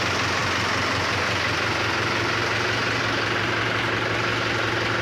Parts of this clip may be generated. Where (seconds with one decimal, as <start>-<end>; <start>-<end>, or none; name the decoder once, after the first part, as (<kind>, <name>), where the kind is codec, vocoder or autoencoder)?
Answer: none